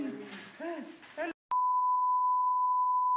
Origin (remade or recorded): recorded